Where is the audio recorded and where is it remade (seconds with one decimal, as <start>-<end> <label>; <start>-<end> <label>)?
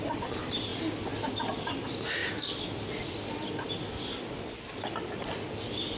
0.0-6.0 recorded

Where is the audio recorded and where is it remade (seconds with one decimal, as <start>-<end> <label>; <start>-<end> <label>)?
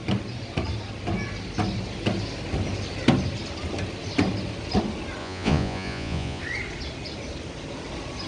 0.0-5.2 recorded; 5.2-6.4 remade; 6.4-8.3 recorded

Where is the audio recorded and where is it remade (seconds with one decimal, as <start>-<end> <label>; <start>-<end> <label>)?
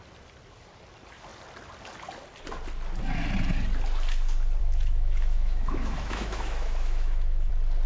0.0-4.6 recorded; 4.6-7.5 remade; 7.5-7.9 recorded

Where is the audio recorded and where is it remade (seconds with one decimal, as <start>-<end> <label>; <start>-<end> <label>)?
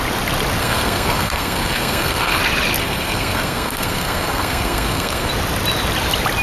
0.0-0.6 recorded; 0.6-2.4 remade; 2.4-2.8 recorded; 2.8-5.3 remade; 5.3-6.4 recorded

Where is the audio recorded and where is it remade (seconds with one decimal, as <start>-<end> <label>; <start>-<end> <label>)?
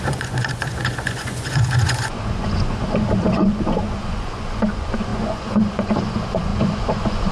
0.0-7.3 remade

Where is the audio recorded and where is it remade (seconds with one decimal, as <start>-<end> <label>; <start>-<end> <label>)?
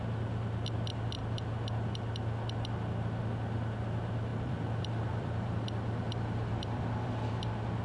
0.0-4.3 recorded; 4.3-5.5 remade; 5.5-6.5 recorded; 6.5-7.3 remade; 7.3-7.8 recorded